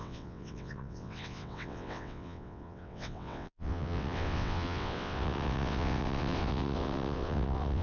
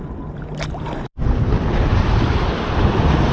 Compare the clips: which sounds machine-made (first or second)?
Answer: first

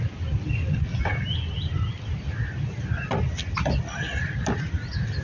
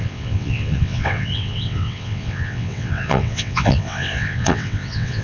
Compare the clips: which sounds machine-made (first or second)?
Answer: second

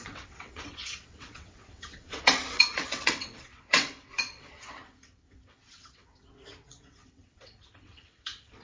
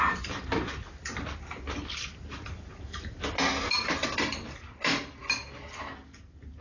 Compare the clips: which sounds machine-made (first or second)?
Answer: first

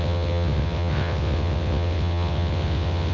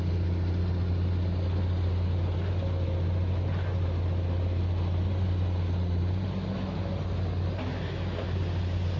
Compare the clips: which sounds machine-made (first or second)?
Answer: first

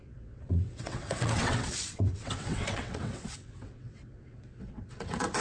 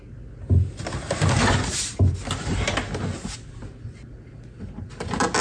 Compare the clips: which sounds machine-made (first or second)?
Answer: first